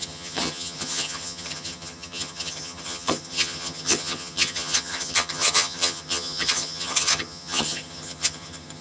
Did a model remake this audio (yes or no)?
yes